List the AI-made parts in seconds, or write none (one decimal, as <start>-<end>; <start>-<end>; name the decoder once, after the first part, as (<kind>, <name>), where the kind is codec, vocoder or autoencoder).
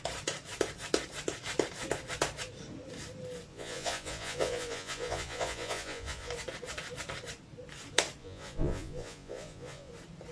3.5-6.3 (vocoder, Vocos); 8.2-9.9